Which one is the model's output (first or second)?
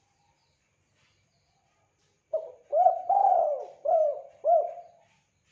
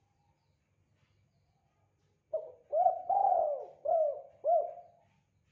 first